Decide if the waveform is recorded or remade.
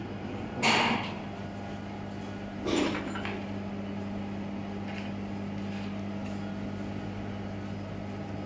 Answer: recorded